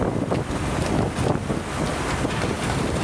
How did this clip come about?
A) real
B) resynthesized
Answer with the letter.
A